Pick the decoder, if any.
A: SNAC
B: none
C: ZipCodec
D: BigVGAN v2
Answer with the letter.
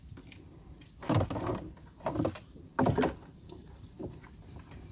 B